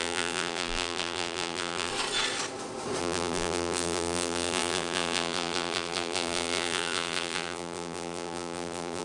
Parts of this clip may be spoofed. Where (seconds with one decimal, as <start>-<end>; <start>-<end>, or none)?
0.0-1.9; 3.0-9.0